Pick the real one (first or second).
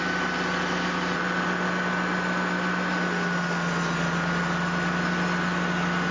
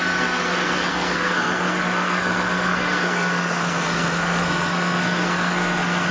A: first